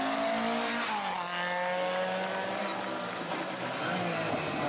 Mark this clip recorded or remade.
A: recorded